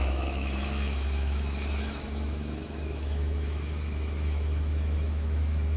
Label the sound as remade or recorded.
remade